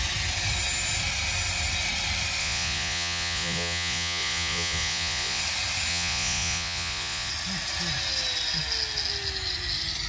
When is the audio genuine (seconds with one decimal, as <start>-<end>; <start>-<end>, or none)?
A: 0.0-2.4; 5.4-5.9; 7.3-10.1